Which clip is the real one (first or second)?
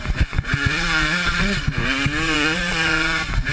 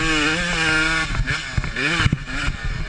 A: second